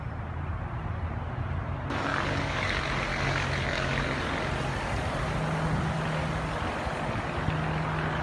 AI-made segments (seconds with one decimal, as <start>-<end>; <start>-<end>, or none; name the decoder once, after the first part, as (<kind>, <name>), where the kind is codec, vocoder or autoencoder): 2.1-2.7 (codec, DAC); 3.1-4.0